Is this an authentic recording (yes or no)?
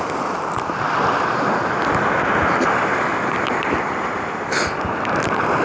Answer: yes